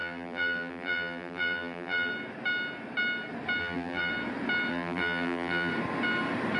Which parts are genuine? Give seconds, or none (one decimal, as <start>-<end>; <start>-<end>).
2.1-3.6; 4.1-4.7; 5.7-6.6